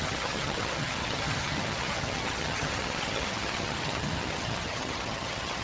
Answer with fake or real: fake